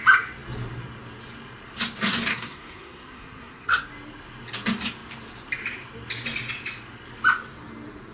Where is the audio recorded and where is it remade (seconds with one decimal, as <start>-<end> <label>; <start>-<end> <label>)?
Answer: 0.0-2.3 recorded; 2.3-3.9 remade; 3.9-8.1 recorded